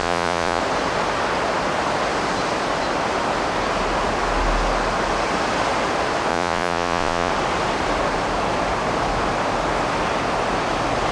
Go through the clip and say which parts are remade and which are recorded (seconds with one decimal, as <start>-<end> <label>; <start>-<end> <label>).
0.0-0.6 remade; 0.6-6.3 recorded; 6.3-7.3 remade; 7.3-11.1 recorded